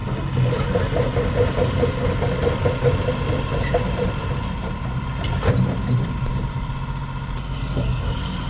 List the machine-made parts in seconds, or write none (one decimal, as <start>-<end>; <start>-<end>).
3.5-6.7